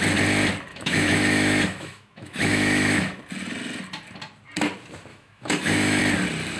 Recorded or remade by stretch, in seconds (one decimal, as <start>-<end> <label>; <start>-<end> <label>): 0.0-0.7 recorded; 0.7-3.2 remade; 3.2-5.1 recorded; 5.1-6.0 remade; 6.0-6.6 recorded